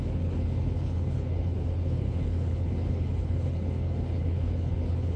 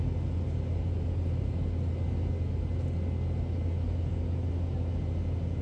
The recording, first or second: second